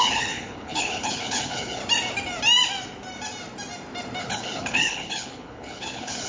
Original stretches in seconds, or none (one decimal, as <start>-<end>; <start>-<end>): 1.8-4.2